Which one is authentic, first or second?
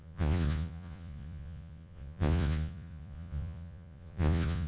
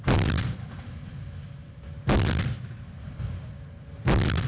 second